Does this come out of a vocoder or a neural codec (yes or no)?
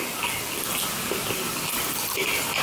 no